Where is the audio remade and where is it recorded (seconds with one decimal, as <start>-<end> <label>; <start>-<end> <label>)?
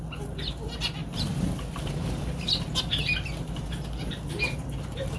0.0-5.2 recorded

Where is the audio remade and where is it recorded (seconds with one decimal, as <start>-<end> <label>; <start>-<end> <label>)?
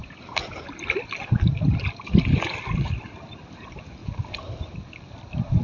0.0-0.7 remade; 0.7-5.6 recorded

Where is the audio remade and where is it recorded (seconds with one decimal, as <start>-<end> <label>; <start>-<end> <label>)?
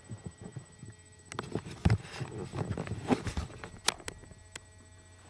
0.0-5.3 recorded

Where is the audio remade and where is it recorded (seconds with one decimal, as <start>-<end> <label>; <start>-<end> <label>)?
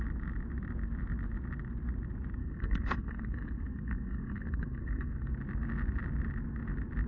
0.0-2.4 recorded; 2.4-5.3 remade; 5.3-7.1 recorded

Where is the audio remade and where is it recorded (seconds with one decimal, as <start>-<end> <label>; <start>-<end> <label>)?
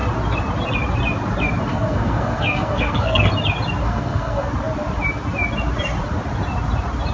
0.0-1.7 recorded; 1.7-3.3 remade; 3.3-3.8 recorded; 3.8-4.5 remade; 4.5-7.1 recorded